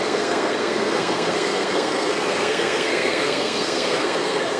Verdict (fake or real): fake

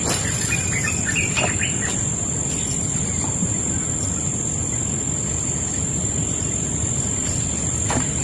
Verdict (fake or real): real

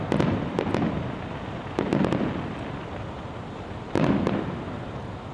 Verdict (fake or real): real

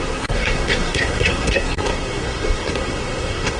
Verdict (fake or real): fake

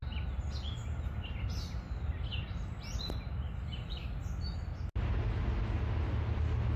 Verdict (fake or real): real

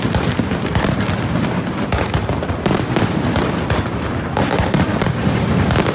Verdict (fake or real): real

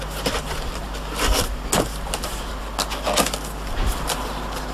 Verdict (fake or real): real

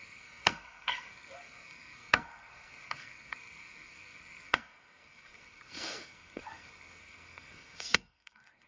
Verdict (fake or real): fake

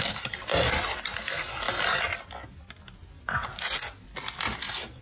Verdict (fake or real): real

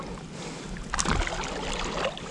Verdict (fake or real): real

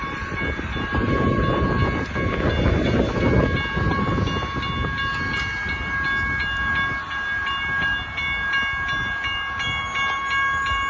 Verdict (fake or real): real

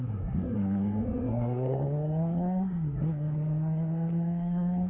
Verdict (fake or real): fake